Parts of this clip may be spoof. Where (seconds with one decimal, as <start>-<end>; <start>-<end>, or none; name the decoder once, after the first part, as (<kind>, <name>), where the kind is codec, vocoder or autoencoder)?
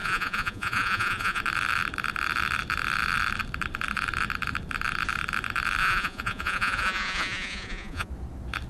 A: 0.0-1.4 (vocoder, Vocos); 5.8-8.1